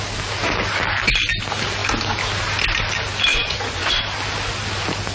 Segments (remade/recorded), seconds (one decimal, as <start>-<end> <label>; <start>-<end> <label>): 0.0-3.3 recorded; 3.3-4.0 remade; 4.0-5.1 recorded